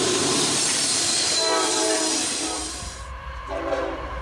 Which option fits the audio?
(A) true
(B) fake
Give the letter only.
B